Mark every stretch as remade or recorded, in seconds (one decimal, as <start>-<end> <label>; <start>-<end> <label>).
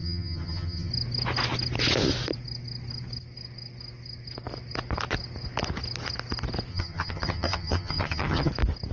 0.0-0.9 remade; 0.9-6.7 recorded; 6.7-8.5 remade; 8.5-8.9 recorded